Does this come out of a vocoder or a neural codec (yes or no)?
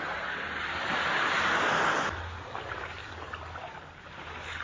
no